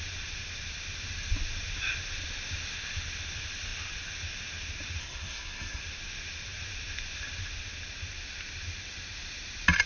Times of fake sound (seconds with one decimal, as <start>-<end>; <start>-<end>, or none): 5.0-5.8